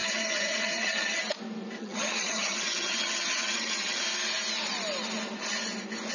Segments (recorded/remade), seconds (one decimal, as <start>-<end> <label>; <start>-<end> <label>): 0.0-1.2 remade; 1.2-1.8 recorded; 1.8-4.0 remade; 4.0-6.1 recorded